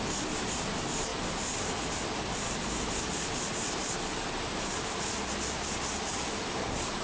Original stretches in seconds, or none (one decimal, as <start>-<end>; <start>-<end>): 0.0-7.0